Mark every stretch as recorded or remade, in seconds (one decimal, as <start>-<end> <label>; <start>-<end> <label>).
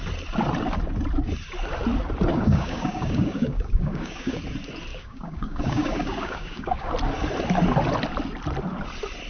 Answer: 0.0-2.3 recorded; 2.3-4.4 remade; 4.4-4.9 recorded; 4.9-6.9 remade; 6.9-9.3 recorded